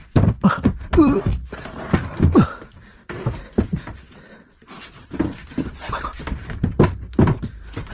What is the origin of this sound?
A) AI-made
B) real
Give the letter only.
B